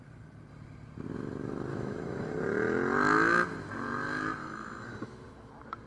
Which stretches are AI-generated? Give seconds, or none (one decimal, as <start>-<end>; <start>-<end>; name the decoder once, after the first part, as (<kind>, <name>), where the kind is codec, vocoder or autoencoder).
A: 1.7-2.3 (autoencoder, DAC-VAE); 4.4-5.5